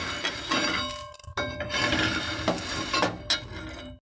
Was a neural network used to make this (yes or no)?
no